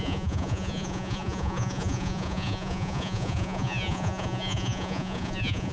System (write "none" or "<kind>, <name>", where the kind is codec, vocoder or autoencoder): vocoder, Vocos